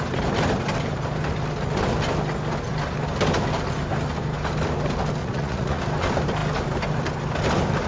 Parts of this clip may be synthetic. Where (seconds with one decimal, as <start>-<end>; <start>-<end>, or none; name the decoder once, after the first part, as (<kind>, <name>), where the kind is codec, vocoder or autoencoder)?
5.2-5.8 (vocoder, Vocos)